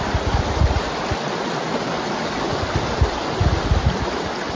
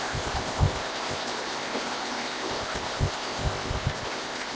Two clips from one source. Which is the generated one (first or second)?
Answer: second